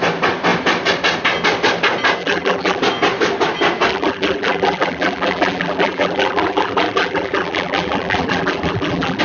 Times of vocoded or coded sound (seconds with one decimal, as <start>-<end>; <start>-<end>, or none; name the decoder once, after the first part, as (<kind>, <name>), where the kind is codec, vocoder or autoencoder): 2.2-2.8 (vocoder, BigVGAN v2); 3.9-9.2